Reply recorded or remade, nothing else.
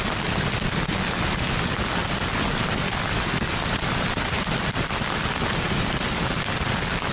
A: recorded